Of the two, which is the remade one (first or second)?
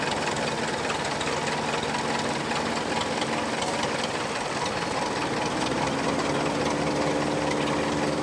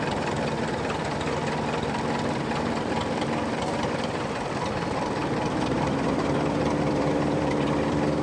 second